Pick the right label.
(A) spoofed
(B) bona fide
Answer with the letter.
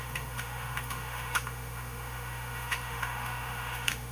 A